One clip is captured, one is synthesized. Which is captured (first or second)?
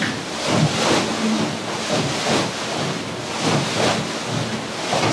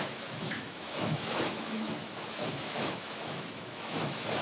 first